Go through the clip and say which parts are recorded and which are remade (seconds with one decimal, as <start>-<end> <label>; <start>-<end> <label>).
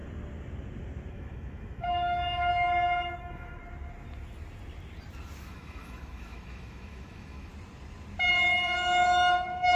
0.0-1.1 recorded; 1.1-2.5 remade; 2.5-3.2 recorded; 3.2-3.6 remade; 3.6-5.4 recorded; 5.4-7.5 remade; 7.5-8.3 recorded; 8.3-9.8 remade